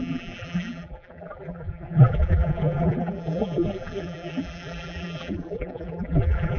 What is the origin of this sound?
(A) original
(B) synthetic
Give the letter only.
B